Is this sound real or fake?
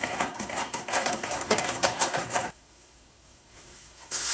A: fake